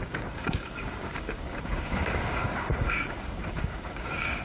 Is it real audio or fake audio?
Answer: fake